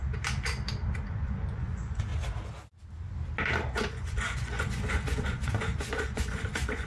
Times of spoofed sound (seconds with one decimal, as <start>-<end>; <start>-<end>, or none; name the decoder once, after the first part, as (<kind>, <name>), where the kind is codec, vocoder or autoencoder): 1.1-2.1 (vocoder, Vocos); 3.7-6.9